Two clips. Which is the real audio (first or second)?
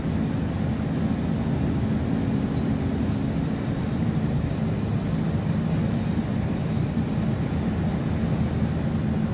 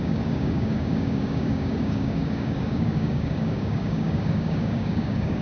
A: first